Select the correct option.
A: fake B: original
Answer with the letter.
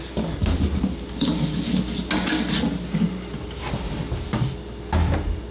B